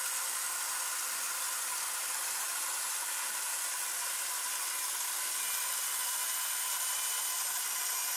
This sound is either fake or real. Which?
real